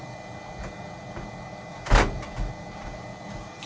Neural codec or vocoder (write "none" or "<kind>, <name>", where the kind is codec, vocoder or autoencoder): none